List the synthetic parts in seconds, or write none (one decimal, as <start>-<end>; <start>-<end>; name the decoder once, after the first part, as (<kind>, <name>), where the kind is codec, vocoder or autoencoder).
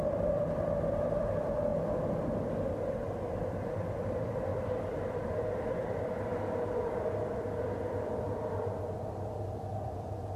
0.0-1.7 (vocoder, BigVGAN v2); 2.7-6.3; 6.8-10.4